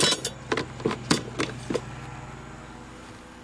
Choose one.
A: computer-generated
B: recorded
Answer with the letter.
B